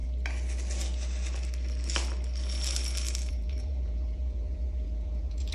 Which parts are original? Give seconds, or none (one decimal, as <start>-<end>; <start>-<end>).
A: 0.0-3.3